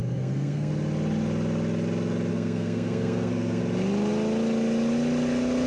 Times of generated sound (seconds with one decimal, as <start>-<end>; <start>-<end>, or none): 0.0-0.7; 2.3-3.6